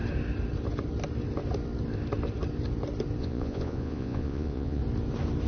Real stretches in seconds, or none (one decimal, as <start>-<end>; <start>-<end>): 0.0-3.2; 4.8-5.5